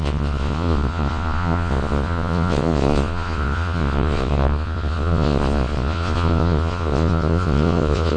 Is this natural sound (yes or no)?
no